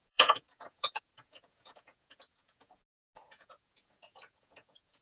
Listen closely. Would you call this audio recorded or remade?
remade